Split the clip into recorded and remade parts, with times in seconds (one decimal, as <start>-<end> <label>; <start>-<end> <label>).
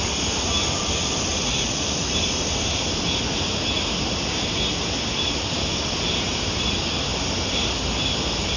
0.0-1.3 recorded; 1.3-1.9 remade; 1.9-8.6 recorded